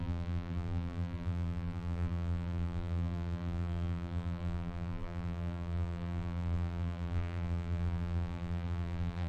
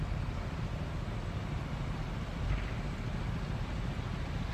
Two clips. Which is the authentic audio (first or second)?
second